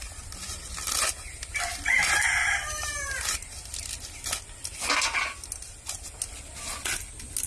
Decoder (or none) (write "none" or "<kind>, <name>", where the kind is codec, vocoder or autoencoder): none